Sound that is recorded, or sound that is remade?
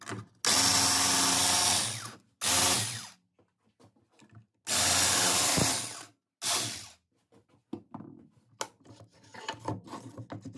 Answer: recorded